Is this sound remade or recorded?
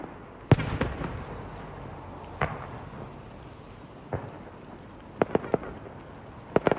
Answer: recorded